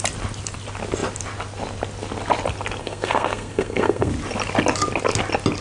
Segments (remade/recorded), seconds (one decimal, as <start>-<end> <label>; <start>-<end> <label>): 0.0-2.8 recorded; 2.8-4.1 remade; 4.1-5.6 recorded